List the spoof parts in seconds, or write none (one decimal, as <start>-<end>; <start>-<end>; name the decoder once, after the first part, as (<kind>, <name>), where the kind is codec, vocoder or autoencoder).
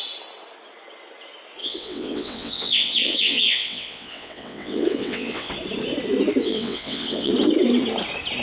1.6-5.5 (vocoder, WaveNeXt); 6.4-7.3